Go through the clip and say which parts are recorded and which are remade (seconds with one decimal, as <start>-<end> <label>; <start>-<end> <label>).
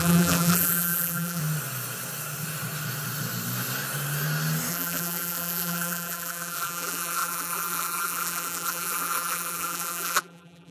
0.0-1.4 remade; 1.4-4.7 recorded; 4.7-10.7 remade